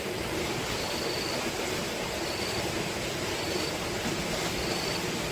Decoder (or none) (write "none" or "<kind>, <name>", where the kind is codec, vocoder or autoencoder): none